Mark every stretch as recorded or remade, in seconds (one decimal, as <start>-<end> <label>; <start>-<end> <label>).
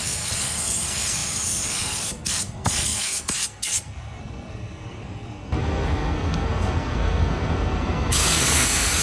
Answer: 0.0-9.0 remade